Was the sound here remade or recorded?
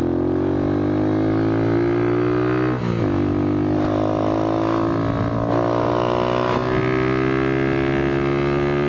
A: recorded